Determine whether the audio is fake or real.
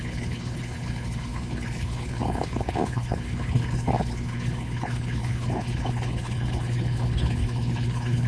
fake